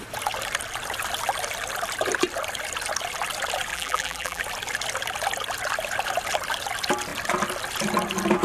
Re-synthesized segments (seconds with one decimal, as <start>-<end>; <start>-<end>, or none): 3.7-4.4

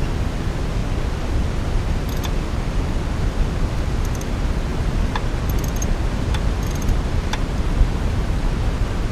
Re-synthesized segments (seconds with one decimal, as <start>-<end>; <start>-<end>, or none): 0.8-2.1; 4.7-7.6

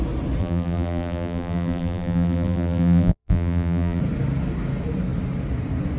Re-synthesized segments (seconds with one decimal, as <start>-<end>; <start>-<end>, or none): 0.4-4.0

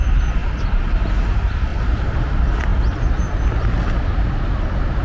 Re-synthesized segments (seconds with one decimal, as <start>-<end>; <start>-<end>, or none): 1.7-2.3

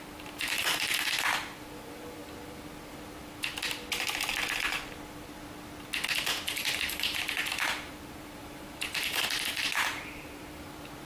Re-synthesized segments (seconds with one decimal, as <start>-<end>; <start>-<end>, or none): 0.0-2.2; 6.9-11.0

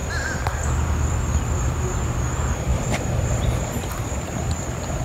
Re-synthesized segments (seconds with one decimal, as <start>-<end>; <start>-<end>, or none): 0.0-2.1; 2.7-3.4

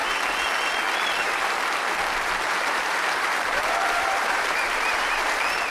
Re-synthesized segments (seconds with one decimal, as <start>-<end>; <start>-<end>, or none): 1.1-5.7

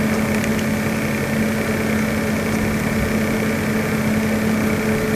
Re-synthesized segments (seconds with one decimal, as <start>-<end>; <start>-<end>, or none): none